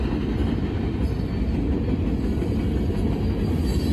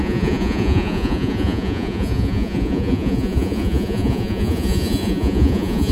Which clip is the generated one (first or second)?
second